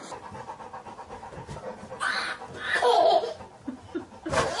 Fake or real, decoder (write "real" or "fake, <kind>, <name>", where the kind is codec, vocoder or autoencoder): real